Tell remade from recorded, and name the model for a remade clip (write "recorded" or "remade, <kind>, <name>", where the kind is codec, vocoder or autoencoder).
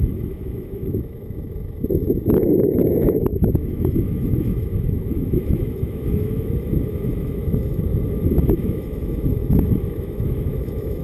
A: remade, autoencoder, DAC-VAE